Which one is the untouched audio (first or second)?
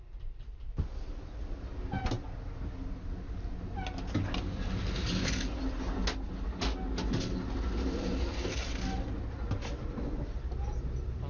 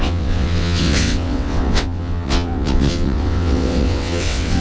first